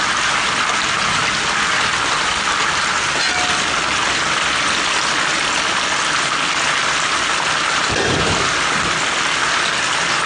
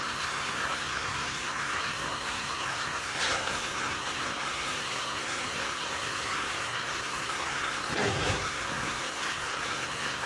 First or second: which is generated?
second